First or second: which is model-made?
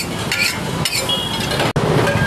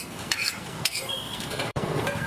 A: second